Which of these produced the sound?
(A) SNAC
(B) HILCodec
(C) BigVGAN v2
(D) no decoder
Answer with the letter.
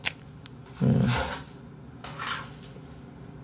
D